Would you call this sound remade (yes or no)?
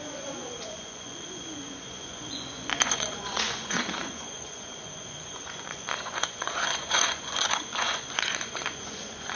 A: yes